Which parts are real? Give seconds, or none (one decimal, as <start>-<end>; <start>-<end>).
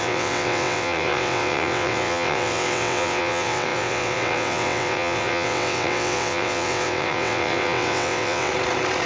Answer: 8.5-9.1